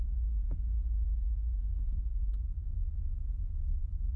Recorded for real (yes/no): no